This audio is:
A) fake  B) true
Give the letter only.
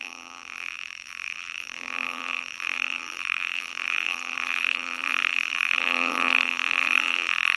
A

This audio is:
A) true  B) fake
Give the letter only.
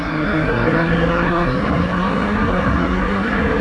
B